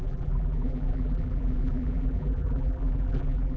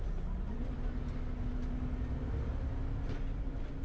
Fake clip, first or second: first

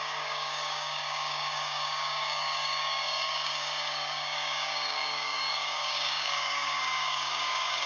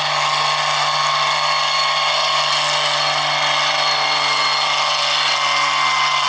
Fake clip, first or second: first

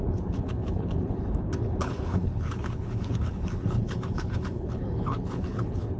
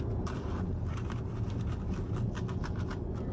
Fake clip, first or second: first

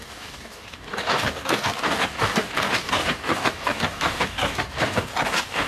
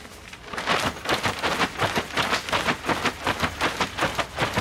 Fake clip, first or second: first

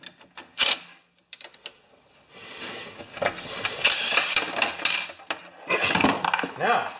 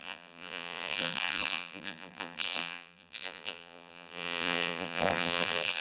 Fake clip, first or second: second